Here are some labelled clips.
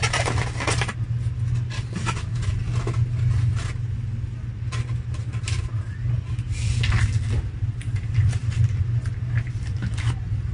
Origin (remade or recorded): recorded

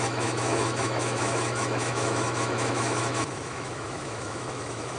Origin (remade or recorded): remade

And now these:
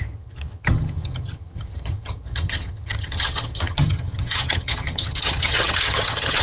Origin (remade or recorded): remade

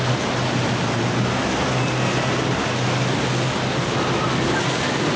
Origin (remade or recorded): recorded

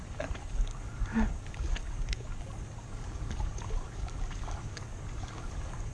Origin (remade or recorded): remade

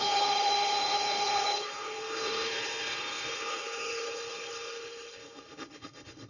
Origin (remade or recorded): remade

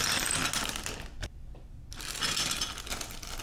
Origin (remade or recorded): recorded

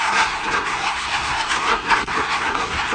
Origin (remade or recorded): remade